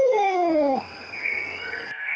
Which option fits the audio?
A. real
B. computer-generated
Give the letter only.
B